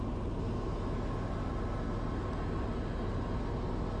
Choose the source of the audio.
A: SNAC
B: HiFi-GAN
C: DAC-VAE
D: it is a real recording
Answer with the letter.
D